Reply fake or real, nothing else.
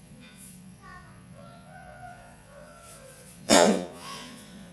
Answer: fake